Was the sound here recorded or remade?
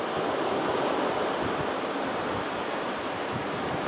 recorded